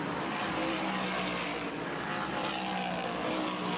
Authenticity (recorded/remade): recorded